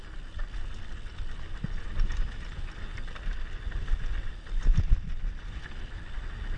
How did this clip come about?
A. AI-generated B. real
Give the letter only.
B